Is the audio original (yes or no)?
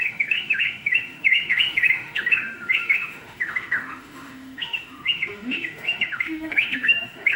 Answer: no